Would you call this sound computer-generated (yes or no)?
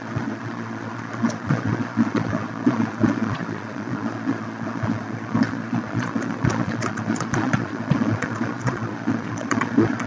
yes